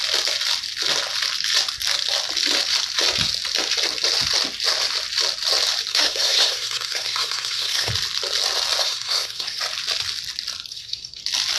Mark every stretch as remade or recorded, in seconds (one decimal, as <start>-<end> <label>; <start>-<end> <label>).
0.0-5.9 recorded; 5.9-7.9 remade; 7.9-8.8 recorded; 8.8-9.6 remade; 9.6-10.7 recorded; 10.7-11.2 remade; 11.2-11.6 recorded